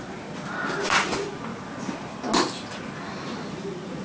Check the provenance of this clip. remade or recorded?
recorded